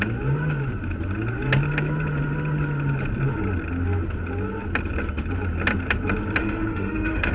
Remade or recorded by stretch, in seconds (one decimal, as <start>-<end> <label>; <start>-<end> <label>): 0.0-6.4 recorded; 6.4-7.3 remade